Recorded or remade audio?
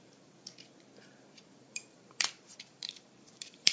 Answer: remade